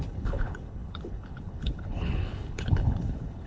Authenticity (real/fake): fake